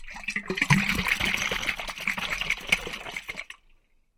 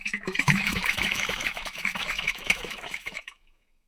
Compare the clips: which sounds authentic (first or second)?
first